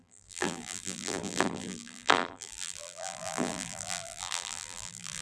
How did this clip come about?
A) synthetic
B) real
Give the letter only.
A